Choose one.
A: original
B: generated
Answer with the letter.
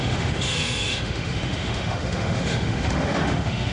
B